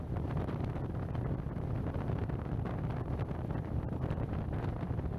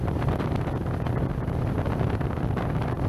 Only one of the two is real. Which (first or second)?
second